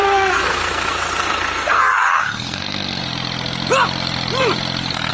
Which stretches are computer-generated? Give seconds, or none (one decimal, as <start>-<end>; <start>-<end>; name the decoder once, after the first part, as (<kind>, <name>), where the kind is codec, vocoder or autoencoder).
0.0-3.0 (codec, SNAC)